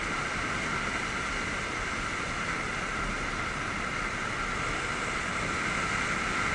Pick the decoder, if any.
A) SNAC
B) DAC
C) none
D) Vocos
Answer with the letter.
C